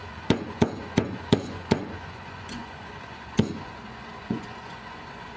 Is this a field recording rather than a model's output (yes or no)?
no